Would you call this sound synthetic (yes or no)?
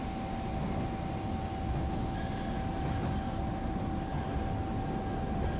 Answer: no